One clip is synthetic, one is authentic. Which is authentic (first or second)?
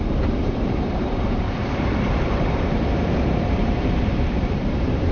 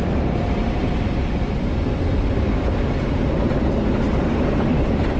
second